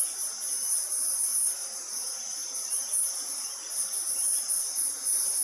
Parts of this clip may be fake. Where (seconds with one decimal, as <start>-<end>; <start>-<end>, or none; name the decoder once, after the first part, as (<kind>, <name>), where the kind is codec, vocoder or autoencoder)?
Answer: none